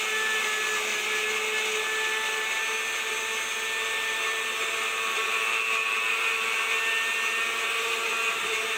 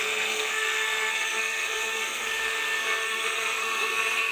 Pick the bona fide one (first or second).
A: first